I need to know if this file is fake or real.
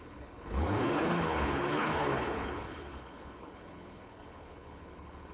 fake